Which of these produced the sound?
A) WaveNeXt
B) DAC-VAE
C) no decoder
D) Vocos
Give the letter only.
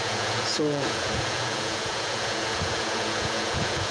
D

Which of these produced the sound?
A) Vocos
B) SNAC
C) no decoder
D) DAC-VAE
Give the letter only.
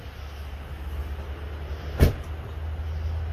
C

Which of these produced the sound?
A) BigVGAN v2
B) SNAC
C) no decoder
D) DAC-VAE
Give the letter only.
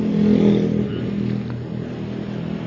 C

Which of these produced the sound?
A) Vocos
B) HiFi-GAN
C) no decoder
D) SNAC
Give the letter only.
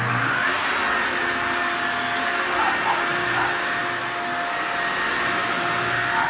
C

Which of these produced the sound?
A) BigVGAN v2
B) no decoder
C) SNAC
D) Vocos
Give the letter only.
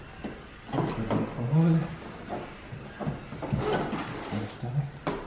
B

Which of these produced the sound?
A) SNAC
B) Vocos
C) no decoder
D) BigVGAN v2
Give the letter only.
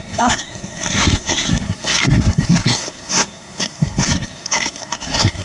A